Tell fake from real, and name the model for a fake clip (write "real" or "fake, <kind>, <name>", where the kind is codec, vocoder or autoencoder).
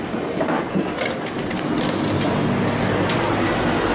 real